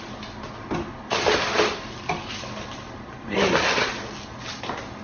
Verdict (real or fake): real